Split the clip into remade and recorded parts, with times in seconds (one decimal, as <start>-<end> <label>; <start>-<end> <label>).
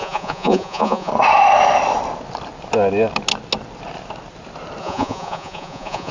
0.0-1.1 remade; 1.1-4.8 recorded; 4.8-6.1 remade